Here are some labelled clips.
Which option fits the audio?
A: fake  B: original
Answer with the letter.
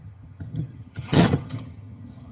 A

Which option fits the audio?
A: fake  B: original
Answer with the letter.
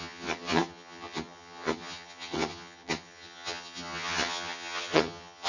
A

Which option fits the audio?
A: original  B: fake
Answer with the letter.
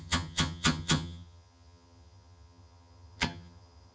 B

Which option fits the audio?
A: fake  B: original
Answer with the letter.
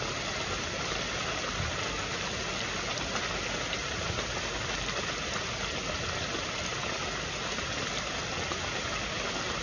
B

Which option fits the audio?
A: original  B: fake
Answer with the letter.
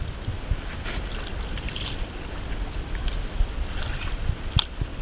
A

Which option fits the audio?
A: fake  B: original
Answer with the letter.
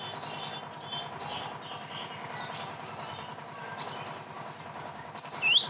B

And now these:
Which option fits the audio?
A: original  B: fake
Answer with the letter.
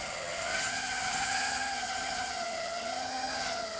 B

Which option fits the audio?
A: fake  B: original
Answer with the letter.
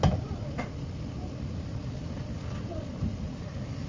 B